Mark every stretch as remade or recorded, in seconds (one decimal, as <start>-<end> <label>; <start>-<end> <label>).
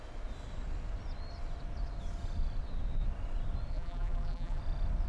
0.0-3.7 recorded; 3.7-4.6 remade; 4.6-5.1 recorded